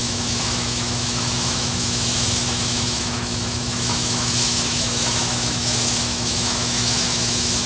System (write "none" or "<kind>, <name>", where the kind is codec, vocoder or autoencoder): autoencoder, DAC-VAE